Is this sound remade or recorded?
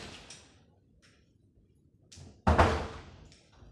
recorded